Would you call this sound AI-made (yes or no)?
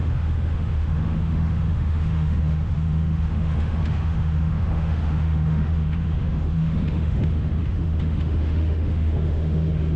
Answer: yes